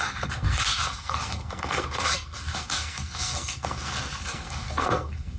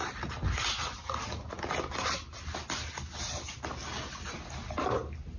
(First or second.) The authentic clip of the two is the second